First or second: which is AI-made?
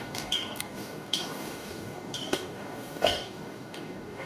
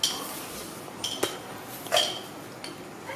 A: first